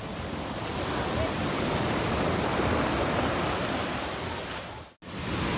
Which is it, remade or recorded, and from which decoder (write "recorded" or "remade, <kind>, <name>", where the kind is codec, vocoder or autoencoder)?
recorded